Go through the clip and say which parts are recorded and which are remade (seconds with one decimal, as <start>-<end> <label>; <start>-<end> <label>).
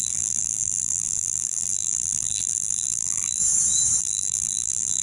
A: 0.0-3.4 remade; 3.4-4.0 recorded; 4.0-5.0 remade